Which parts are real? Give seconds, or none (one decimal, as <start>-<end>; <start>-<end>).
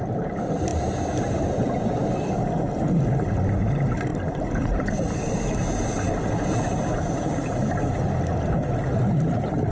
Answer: 0.0-0.7; 1.4-4.1; 5.4-9.7